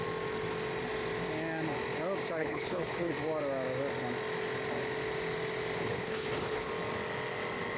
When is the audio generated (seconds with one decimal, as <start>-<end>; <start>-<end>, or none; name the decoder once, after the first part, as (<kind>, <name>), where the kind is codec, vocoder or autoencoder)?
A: 2.4-3.1 (codec, HILCodec); 5.8-6.7